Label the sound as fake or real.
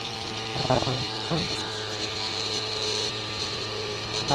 fake